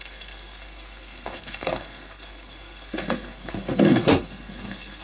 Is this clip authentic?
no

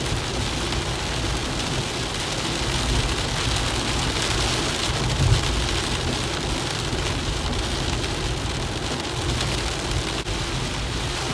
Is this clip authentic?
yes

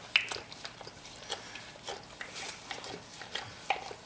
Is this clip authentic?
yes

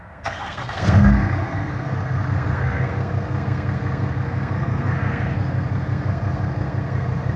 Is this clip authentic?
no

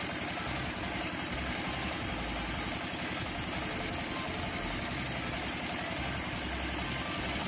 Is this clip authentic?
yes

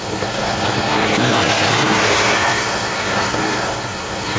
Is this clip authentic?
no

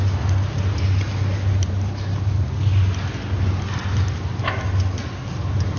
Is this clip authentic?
yes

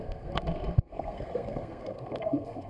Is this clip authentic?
no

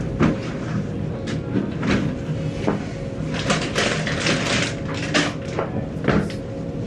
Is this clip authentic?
yes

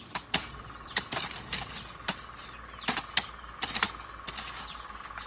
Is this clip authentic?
yes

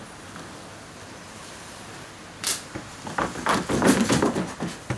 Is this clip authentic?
yes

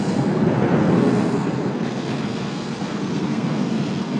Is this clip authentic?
no